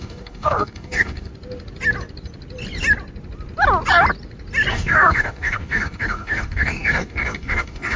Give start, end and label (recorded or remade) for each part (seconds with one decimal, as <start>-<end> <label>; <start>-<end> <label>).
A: 0.0-1.3 remade; 1.3-4.7 recorded; 4.7-8.0 remade